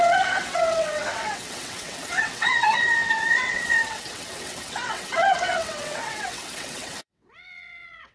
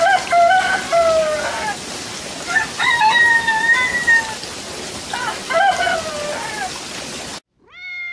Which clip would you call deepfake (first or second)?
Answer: first